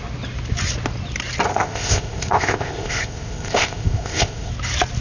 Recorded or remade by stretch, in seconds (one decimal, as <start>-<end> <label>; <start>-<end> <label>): 0.0-1.5 recorded; 1.5-4.5 remade; 4.5-5.0 recorded